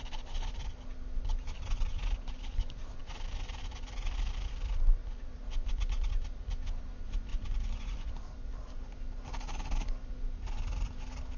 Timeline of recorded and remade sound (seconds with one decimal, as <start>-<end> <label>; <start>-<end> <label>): 0.0-7.3 recorded; 7.3-8.1 remade; 8.1-11.4 recorded